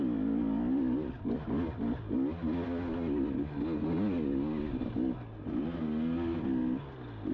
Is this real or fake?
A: real